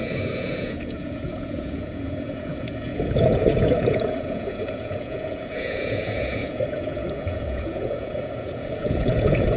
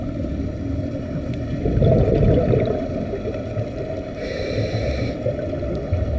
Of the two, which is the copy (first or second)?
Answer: first